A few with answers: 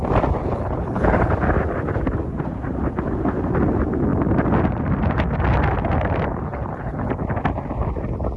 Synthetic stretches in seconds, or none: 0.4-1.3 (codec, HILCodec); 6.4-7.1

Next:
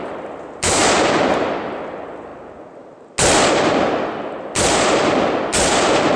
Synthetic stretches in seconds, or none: 0.0-0.8 (vocoder, BigVGAN v2); 1.4-2.3; 3.5-6.2

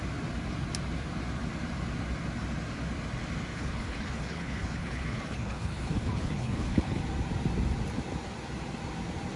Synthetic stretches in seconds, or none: 3.5-7.0 (codec, HILCodec)

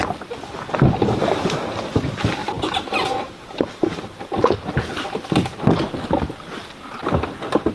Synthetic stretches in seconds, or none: none

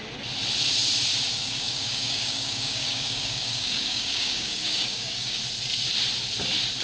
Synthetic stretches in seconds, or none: 1.3-5.4 (codec, DAC)

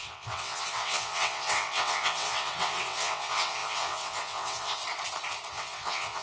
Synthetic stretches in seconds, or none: 0.0-4.8 (vocoder, WaveNeXt); 5.5-6.2

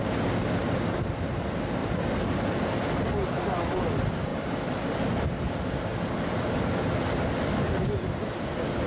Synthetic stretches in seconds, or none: 1.8-3.8 (vocoder, BigVGAN v2); 4.3-5.1